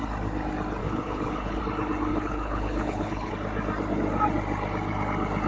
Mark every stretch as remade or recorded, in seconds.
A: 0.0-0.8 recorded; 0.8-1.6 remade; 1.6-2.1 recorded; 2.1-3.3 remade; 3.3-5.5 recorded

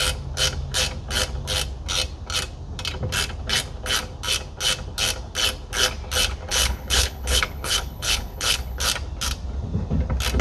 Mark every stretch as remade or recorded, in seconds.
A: 0.0-6.5 recorded; 6.5-8.8 remade; 8.8-10.4 recorded

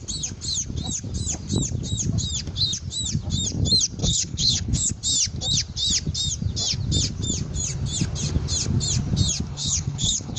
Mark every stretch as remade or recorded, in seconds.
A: 0.0-4.0 recorded; 4.0-4.9 remade; 4.9-9.5 recorded; 9.5-10.4 remade

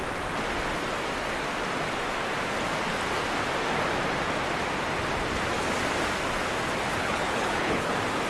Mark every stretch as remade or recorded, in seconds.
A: 0.0-7.0 recorded; 7.0-7.9 remade; 7.9-8.3 recorded